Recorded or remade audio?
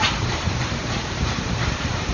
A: remade